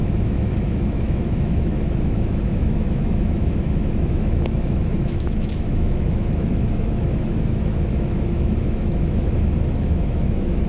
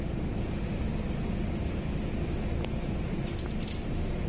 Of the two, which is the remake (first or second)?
first